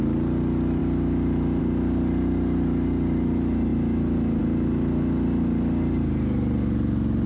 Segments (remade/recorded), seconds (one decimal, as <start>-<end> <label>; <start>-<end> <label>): 0.0-7.3 recorded